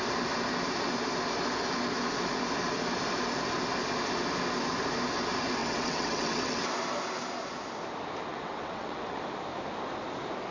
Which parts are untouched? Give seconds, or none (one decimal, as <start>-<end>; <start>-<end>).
0.0-5.6; 6.7-8.3; 9.2-10.5